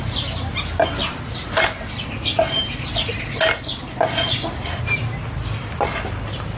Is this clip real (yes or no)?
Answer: yes